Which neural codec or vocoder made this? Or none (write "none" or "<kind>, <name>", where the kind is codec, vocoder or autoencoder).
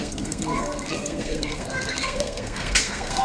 codec, SNAC